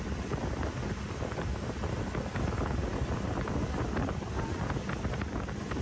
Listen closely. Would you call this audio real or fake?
real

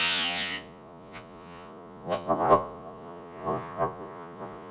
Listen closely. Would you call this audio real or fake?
fake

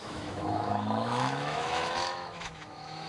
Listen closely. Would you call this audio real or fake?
fake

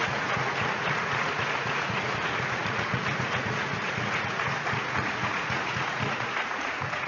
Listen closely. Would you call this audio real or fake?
fake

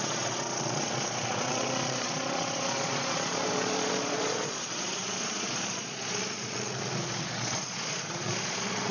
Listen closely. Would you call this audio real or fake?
fake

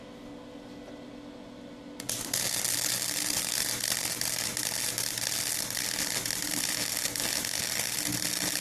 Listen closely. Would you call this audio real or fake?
real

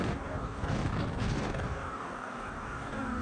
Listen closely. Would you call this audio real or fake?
fake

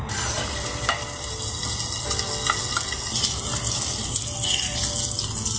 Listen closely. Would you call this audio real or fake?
real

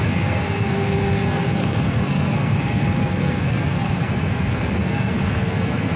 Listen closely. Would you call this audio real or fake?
fake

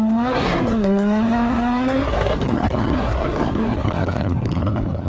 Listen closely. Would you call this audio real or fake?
fake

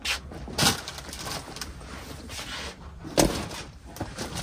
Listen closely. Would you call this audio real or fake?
real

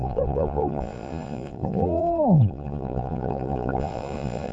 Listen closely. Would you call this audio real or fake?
fake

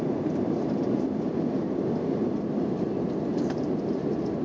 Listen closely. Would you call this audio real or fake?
real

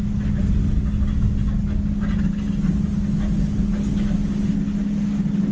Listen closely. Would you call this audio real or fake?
real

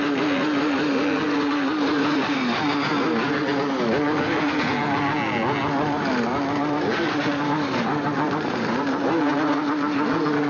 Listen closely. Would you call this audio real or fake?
real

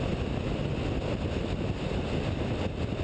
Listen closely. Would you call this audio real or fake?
real